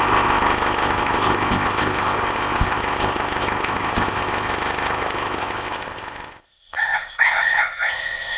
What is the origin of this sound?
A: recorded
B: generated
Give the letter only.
B